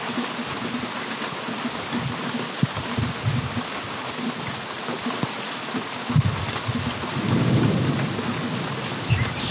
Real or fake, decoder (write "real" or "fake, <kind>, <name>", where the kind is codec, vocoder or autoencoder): real